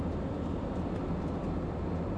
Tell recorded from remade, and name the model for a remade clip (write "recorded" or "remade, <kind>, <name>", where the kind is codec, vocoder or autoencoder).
recorded